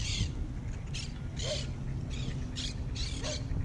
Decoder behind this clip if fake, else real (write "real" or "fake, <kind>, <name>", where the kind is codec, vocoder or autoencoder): real